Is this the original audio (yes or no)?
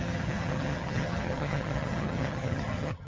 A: no